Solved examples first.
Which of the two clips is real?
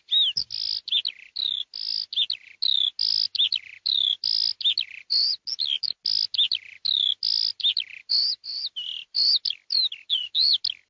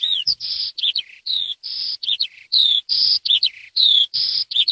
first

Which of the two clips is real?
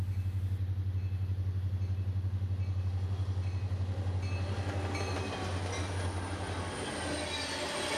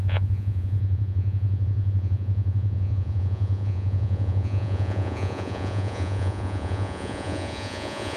first